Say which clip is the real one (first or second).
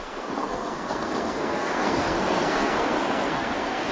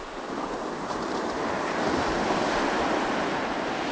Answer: second